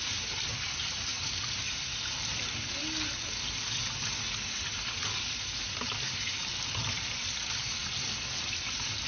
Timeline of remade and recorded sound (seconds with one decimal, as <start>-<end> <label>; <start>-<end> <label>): 0.0-9.1 recorded